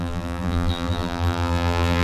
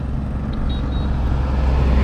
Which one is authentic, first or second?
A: second